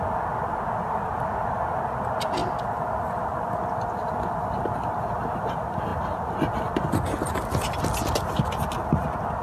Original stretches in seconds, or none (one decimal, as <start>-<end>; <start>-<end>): 0.0-9.4